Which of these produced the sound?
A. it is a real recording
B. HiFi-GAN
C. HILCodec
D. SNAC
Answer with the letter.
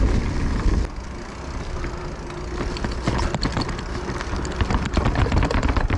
A